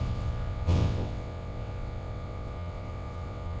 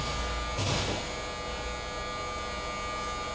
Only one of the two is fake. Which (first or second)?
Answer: first